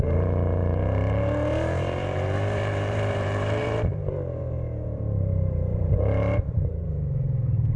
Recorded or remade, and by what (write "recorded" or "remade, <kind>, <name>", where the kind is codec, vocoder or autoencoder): remade, vocoder, BigVGAN v2